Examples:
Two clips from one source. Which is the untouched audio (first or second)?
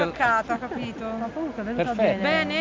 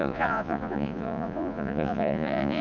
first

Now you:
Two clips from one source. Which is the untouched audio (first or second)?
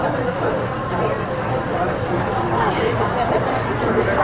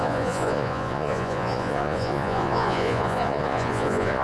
first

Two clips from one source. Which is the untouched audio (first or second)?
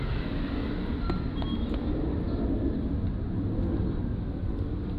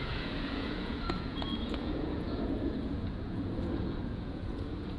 first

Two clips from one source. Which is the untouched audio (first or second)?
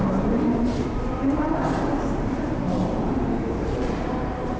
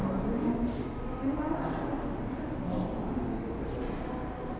second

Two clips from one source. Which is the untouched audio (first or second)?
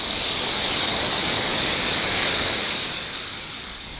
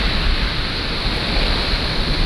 second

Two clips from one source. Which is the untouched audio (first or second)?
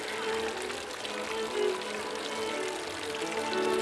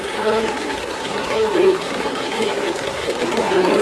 first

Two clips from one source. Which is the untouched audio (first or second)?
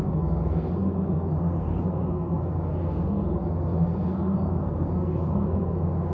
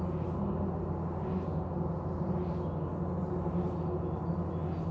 second